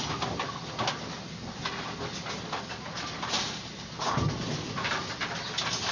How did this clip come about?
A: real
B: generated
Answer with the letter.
A